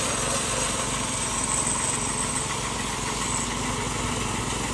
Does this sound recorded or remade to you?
recorded